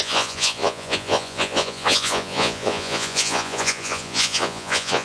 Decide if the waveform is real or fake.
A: fake